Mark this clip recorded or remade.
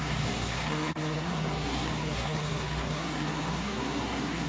remade